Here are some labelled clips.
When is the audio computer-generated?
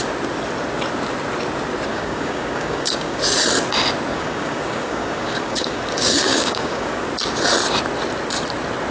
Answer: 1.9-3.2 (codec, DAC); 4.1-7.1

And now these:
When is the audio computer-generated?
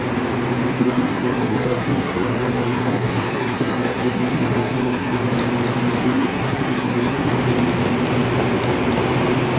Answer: 0.7-5.2 (codec, SNAC); 6.0-7.3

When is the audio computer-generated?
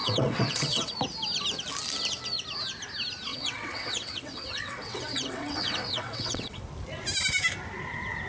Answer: 0.0-0.9 (vocoder, WaveNeXt); 3.3-6.6